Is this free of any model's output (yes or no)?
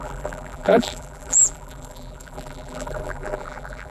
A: no